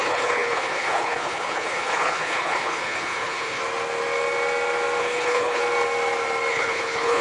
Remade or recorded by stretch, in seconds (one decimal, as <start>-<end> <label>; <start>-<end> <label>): 0.0-3.6 remade; 3.6-5.0 recorded; 5.0-5.6 remade; 5.6-6.5 recorded; 6.5-7.2 remade